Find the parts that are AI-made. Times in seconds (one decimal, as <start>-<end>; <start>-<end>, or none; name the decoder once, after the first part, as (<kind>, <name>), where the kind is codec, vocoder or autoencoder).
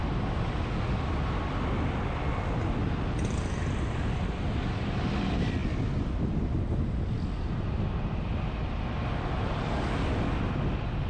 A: none